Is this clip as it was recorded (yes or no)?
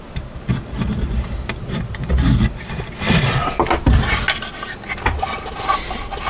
yes